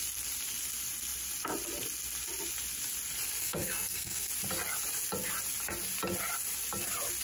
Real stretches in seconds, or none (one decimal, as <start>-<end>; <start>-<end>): 0.0-3.4; 4.3-7.2